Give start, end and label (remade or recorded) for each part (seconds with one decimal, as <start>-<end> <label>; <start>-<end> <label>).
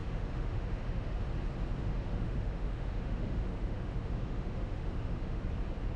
0.0-1.2 remade; 1.2-1.8 recorded; 1.8-5.4 remade; 5.4-6.0 recorded